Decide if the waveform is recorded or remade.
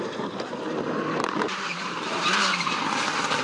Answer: remade